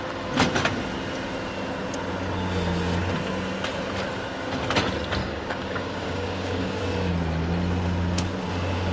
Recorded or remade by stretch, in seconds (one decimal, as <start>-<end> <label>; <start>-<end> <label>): 0.0-5.2 recorded; 5.2-6.8 remade; 6.8-8.9 recorded